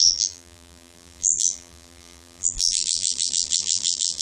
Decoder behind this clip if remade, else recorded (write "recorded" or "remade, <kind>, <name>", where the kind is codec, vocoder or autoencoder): remade, vocoder, BigVGAN v2